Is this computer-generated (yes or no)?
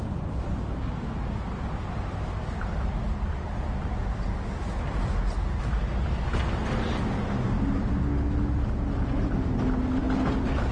no